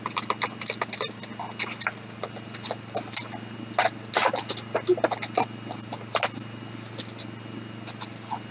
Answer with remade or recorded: recorded